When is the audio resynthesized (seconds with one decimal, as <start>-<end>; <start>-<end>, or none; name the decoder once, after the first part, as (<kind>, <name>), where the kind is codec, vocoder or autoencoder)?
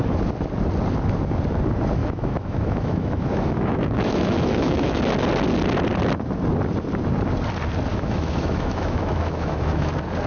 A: 2.0-5.0 (autoencoder, DAC-VAE); 7.9-9.9